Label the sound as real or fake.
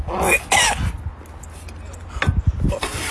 real